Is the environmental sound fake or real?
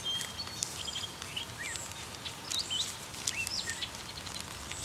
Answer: real